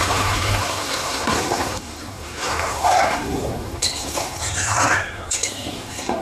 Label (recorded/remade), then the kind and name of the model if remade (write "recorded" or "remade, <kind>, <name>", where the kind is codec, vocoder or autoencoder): remade, codec, SNAC